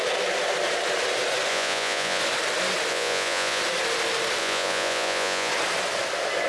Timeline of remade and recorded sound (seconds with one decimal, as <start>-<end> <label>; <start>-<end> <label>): 0.0-1.5 recorded; 1.5-2.2 remade; 2.2-2.9 recorded; 2.9-3.6 remade; 3.6-4.4 recorded; 4.4-5.5 remade; 5.5-6.5 recorded